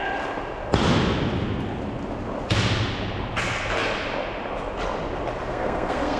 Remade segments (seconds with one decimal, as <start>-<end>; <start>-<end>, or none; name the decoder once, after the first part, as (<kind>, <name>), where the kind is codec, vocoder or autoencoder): 5.5-6.2 (codec, SNAC)